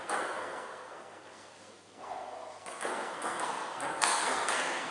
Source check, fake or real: fake